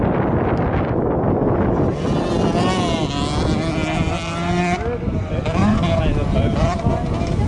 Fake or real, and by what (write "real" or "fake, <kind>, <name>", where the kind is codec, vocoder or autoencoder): real